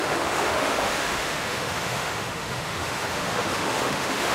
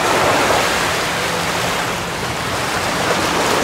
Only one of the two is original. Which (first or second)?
second